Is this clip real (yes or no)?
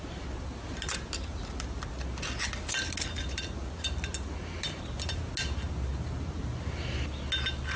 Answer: yes